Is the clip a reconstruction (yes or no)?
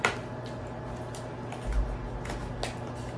no